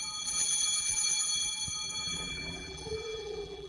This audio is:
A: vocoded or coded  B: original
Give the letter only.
A